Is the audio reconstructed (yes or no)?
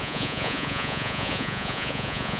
yes